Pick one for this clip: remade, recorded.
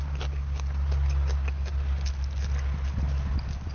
recorded